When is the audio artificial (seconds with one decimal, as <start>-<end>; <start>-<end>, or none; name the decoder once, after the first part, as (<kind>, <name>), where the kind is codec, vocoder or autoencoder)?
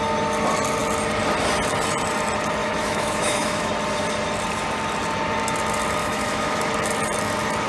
2.6-3.7 (autoencoder, DAC-VAE); 6.0-6.7